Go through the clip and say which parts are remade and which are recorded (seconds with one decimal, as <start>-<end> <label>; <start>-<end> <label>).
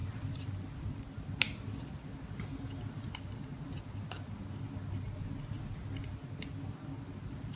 0.0-7.6 recorded